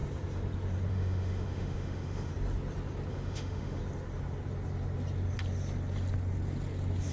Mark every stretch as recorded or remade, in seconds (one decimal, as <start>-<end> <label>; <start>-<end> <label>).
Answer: 0.0-0.9 recorded; 0.9-2.3 remade; 2.3-3.1 recorded; 3.1-3.8 remade; 3.8-7.1 recorded